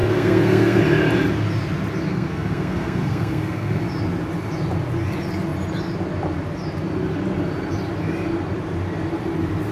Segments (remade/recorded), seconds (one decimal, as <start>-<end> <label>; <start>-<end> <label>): 0.0-0.8 remade; 0.8-2.1 recorded; 2.1-3.8 remade; 3.8-9.7 recorded